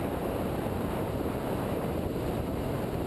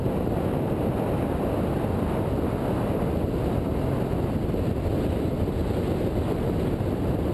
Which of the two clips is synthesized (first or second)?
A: first